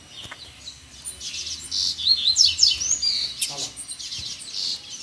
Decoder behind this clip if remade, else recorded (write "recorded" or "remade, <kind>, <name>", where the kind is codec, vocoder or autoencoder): recorded